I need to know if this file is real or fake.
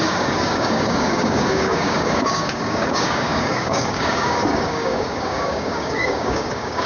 fake